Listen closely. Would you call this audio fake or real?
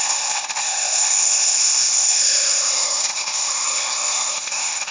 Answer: fake